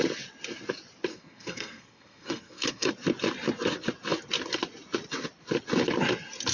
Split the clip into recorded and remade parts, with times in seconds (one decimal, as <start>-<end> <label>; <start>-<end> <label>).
0.0-1.1 recorded; 1.1-2.9 remade; 2.9-6.5 recorded

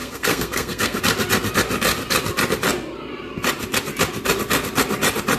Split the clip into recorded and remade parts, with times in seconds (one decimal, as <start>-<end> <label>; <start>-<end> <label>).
0.0-1.0 remade; 1.0-5.4 recorded